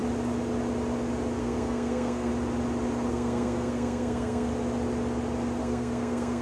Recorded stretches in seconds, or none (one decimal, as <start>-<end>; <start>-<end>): 0.0-1.4; 2.3-3.1; 4.5-5.6